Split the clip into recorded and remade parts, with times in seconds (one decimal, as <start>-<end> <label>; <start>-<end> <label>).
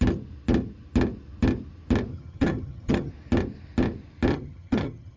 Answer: 0.0-2.1 recorded; 2.1-3.1 remade; 3.1-4.3 recorded; 4.3-5.2 remade